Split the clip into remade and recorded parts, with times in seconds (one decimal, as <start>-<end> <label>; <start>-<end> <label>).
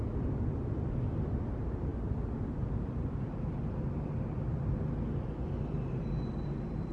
0.0-6.9 recorded